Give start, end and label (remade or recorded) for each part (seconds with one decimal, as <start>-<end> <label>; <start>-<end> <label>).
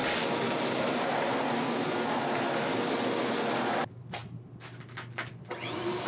0.0-6.1 recorded